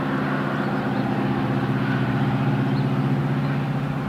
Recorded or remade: recorded